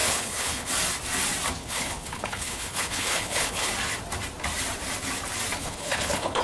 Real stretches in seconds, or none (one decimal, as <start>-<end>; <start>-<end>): 0.7-1.6; 3.7-5.6